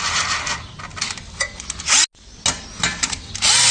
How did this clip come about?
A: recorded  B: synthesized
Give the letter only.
A